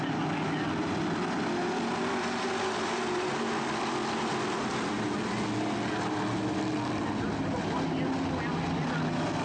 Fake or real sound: real